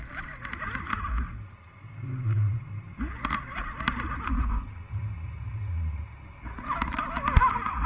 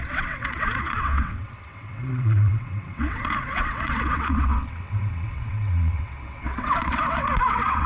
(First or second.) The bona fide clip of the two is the first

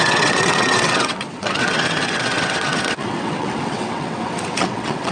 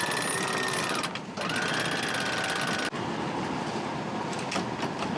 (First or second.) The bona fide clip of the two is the second